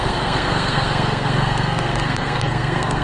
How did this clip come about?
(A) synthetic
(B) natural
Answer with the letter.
A